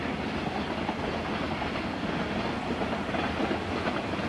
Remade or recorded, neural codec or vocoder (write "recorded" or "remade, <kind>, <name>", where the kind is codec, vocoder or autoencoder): recorded